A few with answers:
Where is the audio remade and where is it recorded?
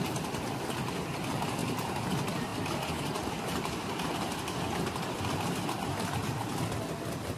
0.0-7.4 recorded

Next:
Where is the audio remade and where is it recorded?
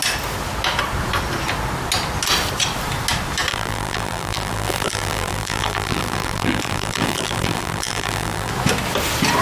0.0-3.5 recorded; 3.5-8.5 remade; 8.5-9.4 recorded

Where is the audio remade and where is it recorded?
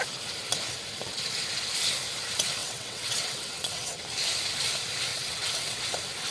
0.0-2.6 recorded; 2.6-4.0 remade; 4.0-5.1 recorded; 5.1-5.8 remade; 5.8-6.3 recorded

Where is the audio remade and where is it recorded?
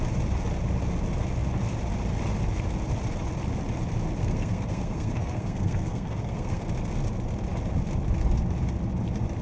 0.0-4.2 recorded; 4.2-6.6 remade; 6.6-9.4 recorded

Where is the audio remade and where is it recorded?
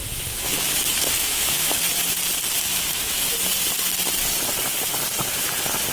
0.0-1.7 remade; 1.7-2.7 recorded; 2.7-3.3 remade; 3.3-5.9 recorded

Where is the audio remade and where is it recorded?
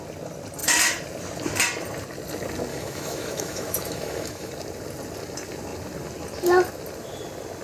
0.0-2.7 recorded; 2.7-4.5 remade; 4.5-7.6 recorded